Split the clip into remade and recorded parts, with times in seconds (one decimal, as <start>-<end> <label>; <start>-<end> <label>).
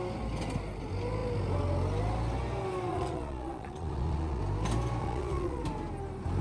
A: 0.0-2.9 recorded; 2.9-4.4 remade; 4.4-5.0 recorded; 5.0-5.6 remade; 5.6-6.4 recorded